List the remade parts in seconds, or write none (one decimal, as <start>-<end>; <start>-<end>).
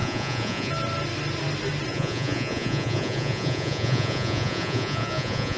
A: 0.0-0.7; 1.9-5.6